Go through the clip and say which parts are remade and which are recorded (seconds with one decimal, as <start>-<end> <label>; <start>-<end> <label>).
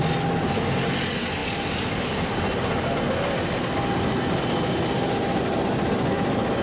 0.0-6.6 recorded